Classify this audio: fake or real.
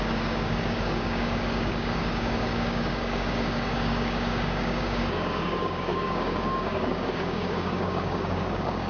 fake